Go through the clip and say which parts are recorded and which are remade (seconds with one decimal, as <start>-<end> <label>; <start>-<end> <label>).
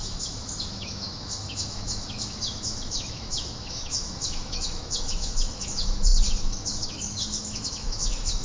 0.0-8.4 remade